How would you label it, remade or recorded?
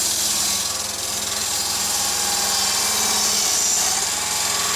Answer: recorded